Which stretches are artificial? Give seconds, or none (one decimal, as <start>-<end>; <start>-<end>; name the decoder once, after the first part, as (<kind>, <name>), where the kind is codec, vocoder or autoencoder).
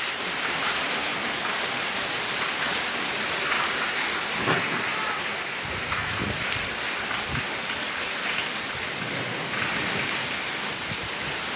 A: none